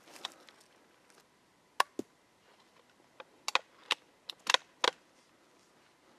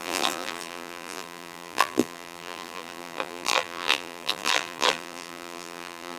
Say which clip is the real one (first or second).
first